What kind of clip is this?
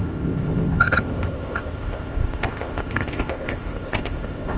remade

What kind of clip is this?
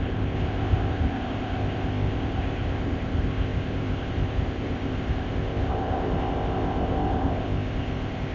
remade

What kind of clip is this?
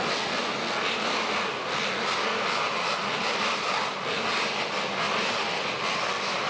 recorded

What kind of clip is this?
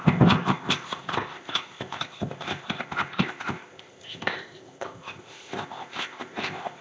remade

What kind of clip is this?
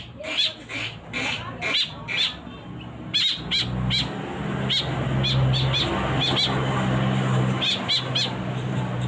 recorded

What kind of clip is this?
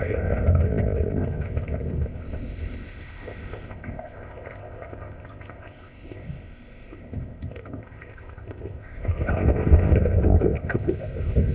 remade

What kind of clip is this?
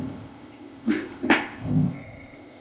remade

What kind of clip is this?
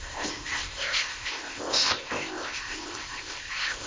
remade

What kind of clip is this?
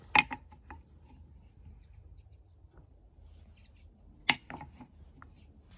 recorded